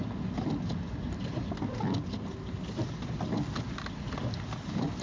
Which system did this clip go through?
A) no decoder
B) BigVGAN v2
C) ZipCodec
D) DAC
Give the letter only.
A